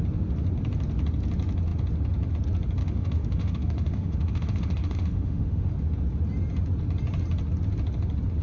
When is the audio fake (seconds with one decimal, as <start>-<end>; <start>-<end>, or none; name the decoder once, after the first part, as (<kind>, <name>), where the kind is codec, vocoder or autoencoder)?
2.8-5.7 (autoencoder, DAC-VAE)